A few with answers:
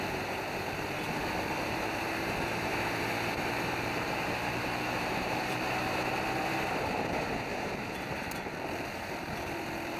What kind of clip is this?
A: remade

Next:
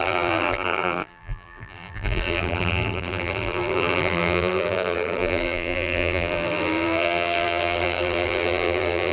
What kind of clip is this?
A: remade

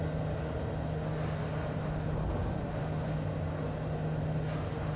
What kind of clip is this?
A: recorded